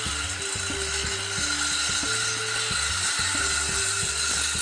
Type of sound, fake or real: real